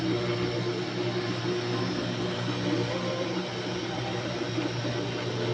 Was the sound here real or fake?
real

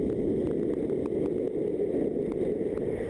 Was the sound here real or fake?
real